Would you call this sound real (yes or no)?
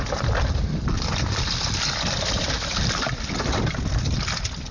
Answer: yes